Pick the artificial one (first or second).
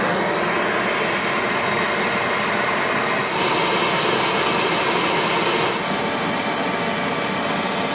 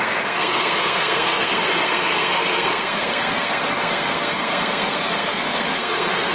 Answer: second